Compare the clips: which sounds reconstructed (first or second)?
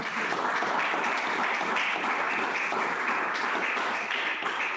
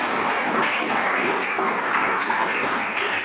second